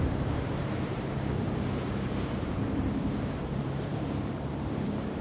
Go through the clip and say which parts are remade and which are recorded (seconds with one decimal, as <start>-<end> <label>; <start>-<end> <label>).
0.0-5.2 remade